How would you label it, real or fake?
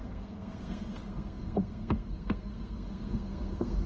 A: fake